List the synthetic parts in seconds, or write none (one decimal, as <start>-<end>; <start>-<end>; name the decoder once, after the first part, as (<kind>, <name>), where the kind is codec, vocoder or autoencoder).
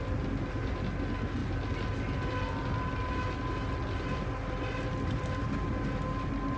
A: none